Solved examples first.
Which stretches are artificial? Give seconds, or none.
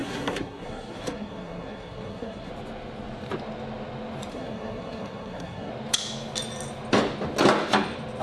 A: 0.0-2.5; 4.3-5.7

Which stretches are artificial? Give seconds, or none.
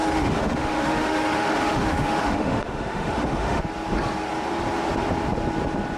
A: 0.0-3.6